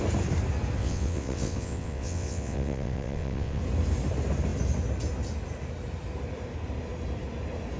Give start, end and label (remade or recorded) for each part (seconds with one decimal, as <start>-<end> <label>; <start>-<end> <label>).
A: 0.0-0.8 recorded; 0.8-3.6 remade; 3.6-7.8 recorded